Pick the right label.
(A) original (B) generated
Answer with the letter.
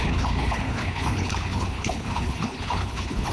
B